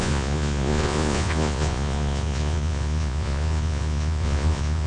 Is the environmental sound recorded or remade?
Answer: remade